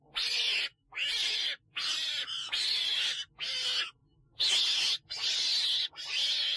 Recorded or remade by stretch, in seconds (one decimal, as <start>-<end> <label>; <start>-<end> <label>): 0.0-6.6 recorded